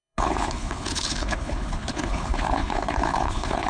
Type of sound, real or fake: fake